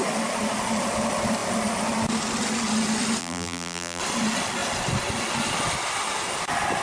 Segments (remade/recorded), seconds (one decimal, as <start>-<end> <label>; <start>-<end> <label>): 0.0-3.2 recorded; 3.2-4.0 remade; 4.0-6.8 recorded